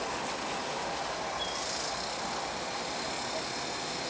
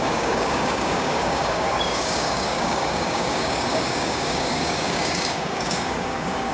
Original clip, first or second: first